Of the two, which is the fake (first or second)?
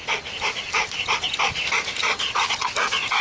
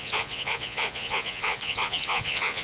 second